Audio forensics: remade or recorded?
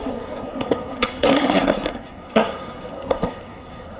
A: remade